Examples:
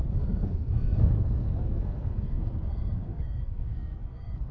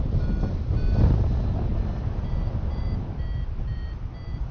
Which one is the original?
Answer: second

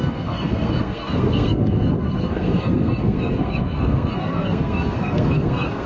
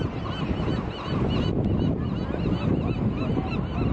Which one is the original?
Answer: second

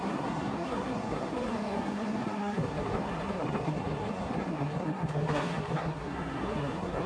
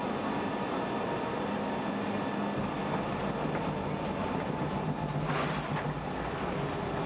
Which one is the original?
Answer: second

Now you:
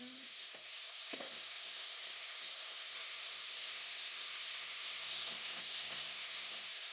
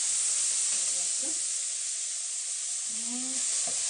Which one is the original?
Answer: second